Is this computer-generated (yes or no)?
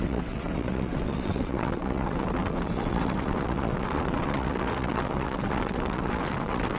yes